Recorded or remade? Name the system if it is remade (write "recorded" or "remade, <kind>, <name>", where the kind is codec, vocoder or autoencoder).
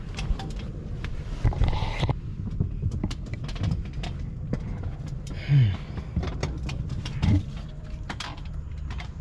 remade, vocoder, BigVGAN v2